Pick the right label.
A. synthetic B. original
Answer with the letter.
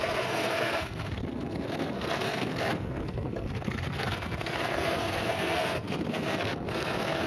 A